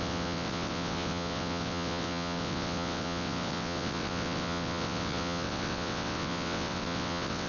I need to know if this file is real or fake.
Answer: fake